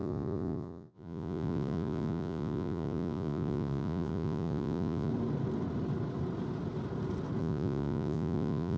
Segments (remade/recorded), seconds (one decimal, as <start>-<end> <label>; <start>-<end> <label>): 0.0-5.1 remade; 5.1-7.4 recorded; 7.4-8.8 remade